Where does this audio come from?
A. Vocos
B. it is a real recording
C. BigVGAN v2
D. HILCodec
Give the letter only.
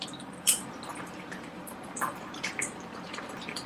C